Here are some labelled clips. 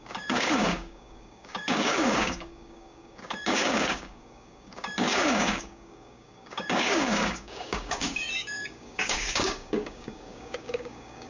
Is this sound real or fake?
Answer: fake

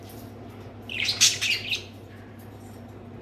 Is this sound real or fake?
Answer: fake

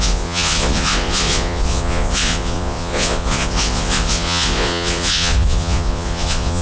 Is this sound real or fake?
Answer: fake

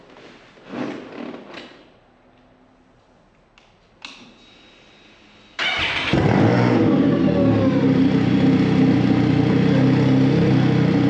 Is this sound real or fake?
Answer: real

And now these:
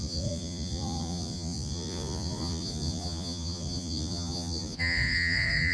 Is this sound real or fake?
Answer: fake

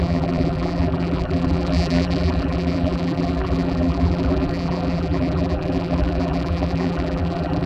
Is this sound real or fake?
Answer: fake